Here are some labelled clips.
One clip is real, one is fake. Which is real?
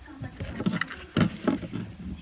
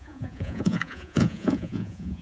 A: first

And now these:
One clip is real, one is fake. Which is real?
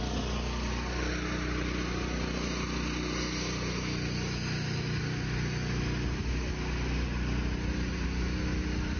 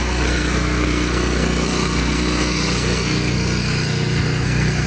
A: first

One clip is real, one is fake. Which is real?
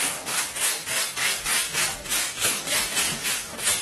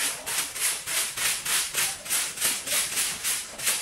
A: second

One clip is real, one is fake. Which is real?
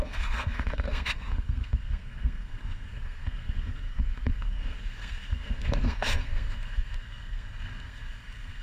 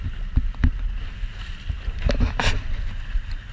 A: second